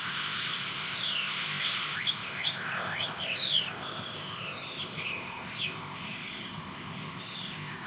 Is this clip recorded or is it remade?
remade